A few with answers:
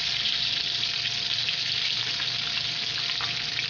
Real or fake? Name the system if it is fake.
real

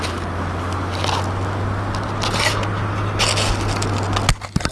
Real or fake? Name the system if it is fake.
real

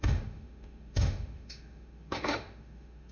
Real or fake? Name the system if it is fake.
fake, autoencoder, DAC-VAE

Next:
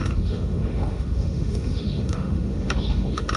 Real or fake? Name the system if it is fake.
fake, autoencoder, DAC-VAE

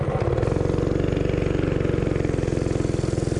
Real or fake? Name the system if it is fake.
real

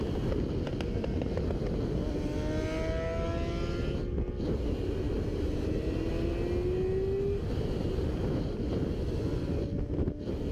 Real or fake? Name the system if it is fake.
real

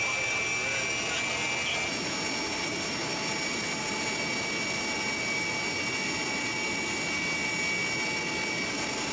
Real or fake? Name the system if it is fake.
real